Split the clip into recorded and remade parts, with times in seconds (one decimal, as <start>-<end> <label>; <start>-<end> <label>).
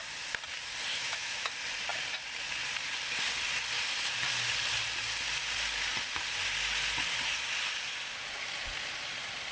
0.0-0.9 recorded; 0.9-1.5 remade; 1.5-9.5 recorded